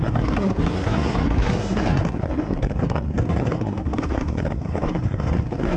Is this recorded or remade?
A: remade